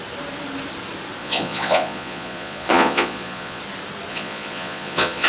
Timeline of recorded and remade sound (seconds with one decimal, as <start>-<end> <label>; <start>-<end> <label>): 0.0-1.2 recorded; 1.2-3.6 remade; 3.6-4.1 recorded; 4.1-5.3 remade